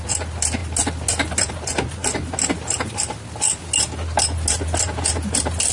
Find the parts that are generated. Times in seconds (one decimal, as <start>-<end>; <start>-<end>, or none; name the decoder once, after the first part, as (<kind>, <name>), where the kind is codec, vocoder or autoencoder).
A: none